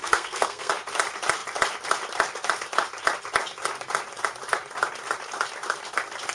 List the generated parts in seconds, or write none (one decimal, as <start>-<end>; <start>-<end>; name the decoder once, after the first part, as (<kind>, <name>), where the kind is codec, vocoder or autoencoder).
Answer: 0.0-0.7 (codec, SNAC)

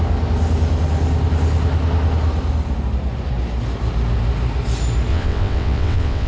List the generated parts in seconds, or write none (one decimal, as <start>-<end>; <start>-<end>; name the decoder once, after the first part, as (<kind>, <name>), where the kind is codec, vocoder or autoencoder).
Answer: 5.1-6.3 (vocoder, WaveNeXt)

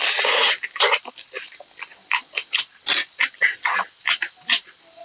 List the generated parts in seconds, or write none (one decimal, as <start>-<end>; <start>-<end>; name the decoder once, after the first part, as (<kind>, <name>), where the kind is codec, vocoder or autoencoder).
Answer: none

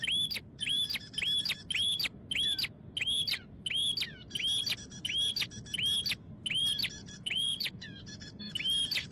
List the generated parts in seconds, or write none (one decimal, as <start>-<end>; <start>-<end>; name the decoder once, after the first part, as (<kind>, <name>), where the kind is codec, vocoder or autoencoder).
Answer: 7.0-8.1 (vocoder, Vocos)

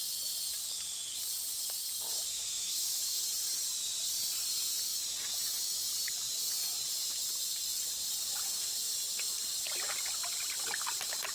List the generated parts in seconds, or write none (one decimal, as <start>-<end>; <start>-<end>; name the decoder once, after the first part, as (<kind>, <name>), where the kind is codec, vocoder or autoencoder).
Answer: 2.3-3.2 (autoencoder, DAC-VAE)

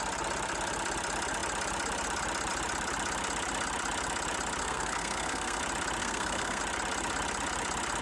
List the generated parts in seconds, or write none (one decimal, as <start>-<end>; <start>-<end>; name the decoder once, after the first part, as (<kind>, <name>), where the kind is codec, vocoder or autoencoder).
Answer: 4.6-5.6 (codec, SNAC); 6.0-6.6

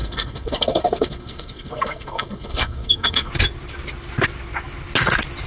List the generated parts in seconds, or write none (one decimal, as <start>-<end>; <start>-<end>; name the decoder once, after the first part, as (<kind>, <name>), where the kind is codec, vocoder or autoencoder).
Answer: 0.0-3.3 (codec, SNAC)

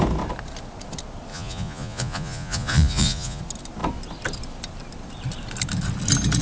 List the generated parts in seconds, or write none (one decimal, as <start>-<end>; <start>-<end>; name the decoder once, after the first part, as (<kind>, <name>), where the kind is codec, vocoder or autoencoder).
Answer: 1.3-3.4 (vocoder, Vocos)